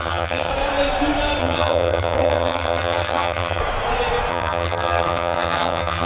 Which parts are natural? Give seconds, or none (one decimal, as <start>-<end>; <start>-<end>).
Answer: 0.5-1.4; 3.6-4.3